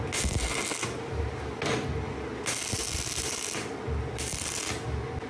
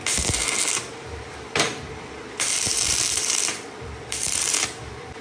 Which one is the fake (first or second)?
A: second